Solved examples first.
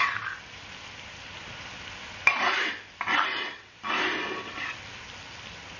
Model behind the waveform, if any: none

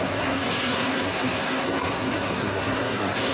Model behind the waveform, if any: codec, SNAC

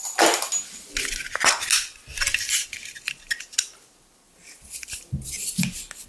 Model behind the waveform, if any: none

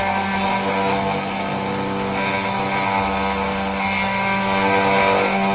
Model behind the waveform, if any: none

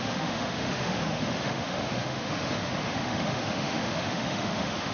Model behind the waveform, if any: autoencoder, DAC-VAE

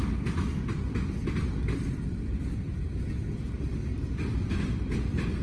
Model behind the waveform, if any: none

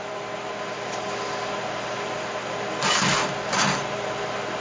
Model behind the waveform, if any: none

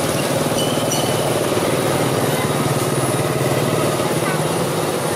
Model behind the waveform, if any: none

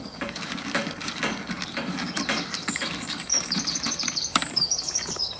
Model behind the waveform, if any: codec, DAC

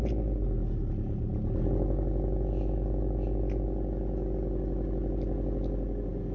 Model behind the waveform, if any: none